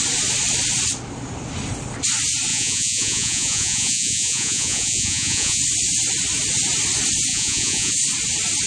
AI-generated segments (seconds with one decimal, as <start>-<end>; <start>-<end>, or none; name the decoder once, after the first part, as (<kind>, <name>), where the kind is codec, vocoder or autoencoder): 2.5-5.6 (vocoder, Vocos); 7.3-7.9